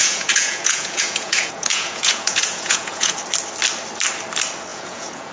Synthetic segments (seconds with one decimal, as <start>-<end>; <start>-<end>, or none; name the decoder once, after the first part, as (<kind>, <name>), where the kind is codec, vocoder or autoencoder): 0.0-3.2 (vocoder, Vocos); 4.7-5.3